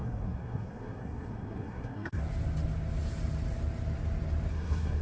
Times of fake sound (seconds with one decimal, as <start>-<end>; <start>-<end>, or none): 0.0-2.2; 4.5-5.0